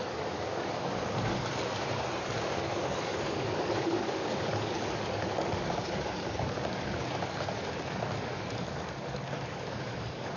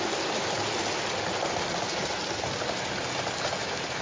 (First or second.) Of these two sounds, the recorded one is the second